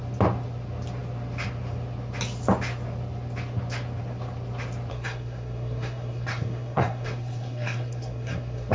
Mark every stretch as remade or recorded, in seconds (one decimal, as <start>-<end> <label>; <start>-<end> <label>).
0.0-4.9 recorded; 4.9-8.7 remade